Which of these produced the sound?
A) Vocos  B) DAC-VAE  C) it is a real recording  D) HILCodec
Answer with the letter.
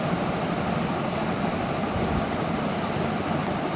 C